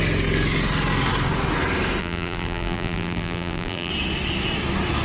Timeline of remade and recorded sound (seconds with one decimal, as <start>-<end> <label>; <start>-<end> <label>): 0.0-2.0 recorded; 2.0-3.9 remade; 3.9-5.0 recorded